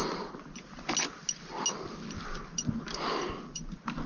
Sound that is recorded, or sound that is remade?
recorded